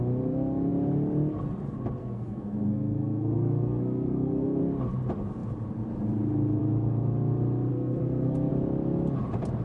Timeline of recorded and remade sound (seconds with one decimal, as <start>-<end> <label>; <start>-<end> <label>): 0.0-2.0 recorded; 2.0-4.6 remade; 4.6-7.7 recorded; 7.7-8.5 remade; 8.5-9.6 recorded

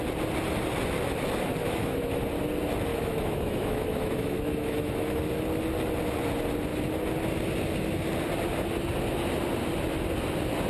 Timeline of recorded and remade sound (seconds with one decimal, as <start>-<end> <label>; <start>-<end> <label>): 0.0-1.6 recorded; 1.6-2.2 remade; 2.2-2.9 recorded; 2.9-5.2 remade; 5.2-10.7 recorded